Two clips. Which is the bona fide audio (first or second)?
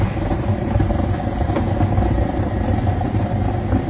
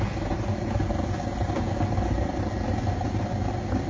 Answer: second